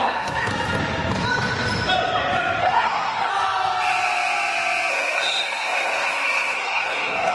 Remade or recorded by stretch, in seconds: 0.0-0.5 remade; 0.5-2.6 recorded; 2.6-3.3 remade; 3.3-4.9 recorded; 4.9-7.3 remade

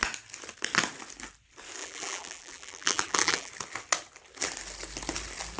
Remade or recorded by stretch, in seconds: 0.0-1.8 recorded; 1.8-3.5 remade; 3.5-5.6 recorded

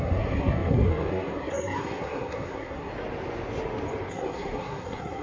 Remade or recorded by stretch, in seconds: 0.0-2.9 remade; 2.9-4.1 recorded; 4.1-5.2 remade

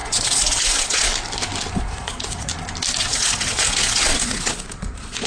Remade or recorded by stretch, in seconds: 0.0-1.1 remade; 1.1-1.7 recorded; 1.7-2.5 remade; 2.5-3.0 recorded; 3.0-5.3 remade

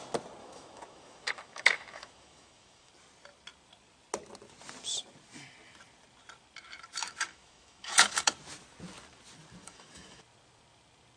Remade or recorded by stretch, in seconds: 0.0-0.4 recorded; 0.4-2.9 remade; 2.9-7.0 recorded; 7.0-8.3 remade; 8.3-9.6 recorded; 9.6-10.2 remade; 10.2-11.2 recorded

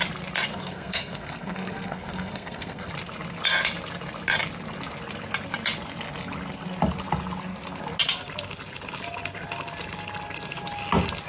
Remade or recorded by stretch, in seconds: 0.0-0.5 recorded; 0.5-2.9 remade; 2.9-11.3 recorded